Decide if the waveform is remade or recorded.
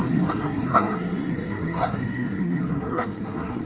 remade